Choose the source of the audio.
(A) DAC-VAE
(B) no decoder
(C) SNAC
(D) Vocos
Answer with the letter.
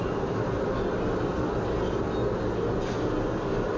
B